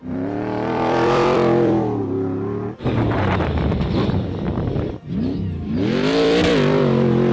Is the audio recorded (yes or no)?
no